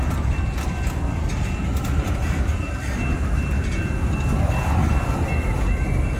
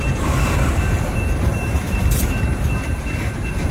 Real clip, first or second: first